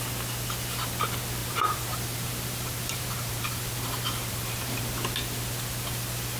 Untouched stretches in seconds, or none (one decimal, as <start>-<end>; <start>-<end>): 0.0-1.4; 4.8-6.4